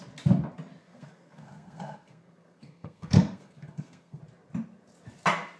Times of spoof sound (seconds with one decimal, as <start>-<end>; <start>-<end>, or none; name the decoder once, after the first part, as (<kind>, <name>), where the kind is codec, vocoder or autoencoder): 0.8-4.2 (codec, SNAC)